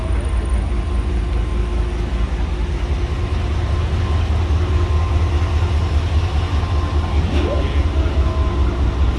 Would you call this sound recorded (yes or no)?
yes